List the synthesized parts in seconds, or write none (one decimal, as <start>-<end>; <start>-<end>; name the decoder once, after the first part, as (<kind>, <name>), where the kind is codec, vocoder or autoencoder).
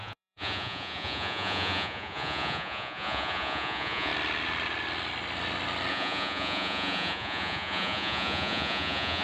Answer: 0.0-4.1 (vocoder, Vocos); 5.9-9.2